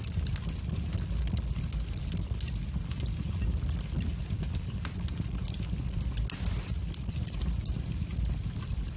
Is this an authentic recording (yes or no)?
yes